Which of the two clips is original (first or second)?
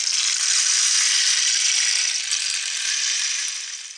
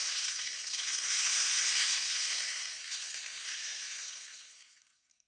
first